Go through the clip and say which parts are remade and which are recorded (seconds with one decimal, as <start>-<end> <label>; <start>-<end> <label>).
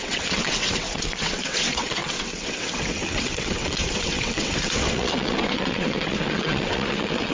0.0-7.3 remade